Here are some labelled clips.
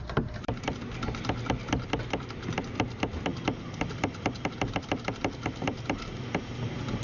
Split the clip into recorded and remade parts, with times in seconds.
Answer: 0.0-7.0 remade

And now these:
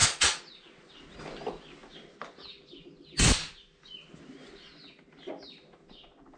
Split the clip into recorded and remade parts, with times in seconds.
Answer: 0.0-0.9 remade; 0.9-6.4 recorded

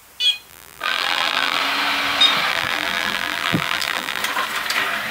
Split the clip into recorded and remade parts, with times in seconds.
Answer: 0.0-0.5 recorded; 0.5-1.6 remade; 1.6-2.5 recorded; 2.5-4.2 remade; 4.2-5.1 recorded

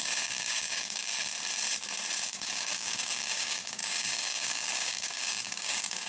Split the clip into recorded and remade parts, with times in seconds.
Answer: 0.0-1.1 remade; 1.1-2.3 recorded; 2.3-6.1 remade

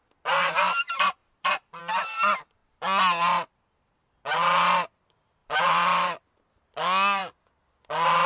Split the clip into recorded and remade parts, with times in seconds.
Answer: 0.0-1.2 recorded; 1.2-1.8 remade; 1.8-5.4 recorded; 5.4-6.3 remade; 6.3-8.3 recorded